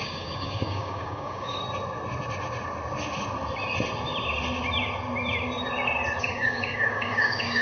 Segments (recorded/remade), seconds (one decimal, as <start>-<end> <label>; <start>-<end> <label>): 0.0-1.6 remade; 1.6-6.2 recorded; 6.2-7.6 remade